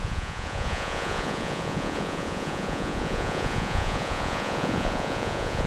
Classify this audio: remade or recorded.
remade